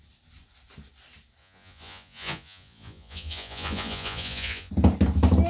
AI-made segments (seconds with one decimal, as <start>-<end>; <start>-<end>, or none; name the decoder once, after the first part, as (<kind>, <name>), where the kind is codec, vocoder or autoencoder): 1.4-4.7 (vocoder, Vocos)